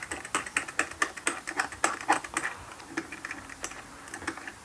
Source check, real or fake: real